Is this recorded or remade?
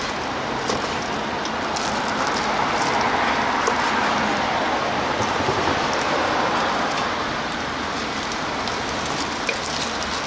recorded